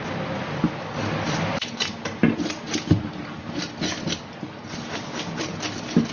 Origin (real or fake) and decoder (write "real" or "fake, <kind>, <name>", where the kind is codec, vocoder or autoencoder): real